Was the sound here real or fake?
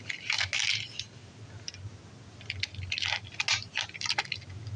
real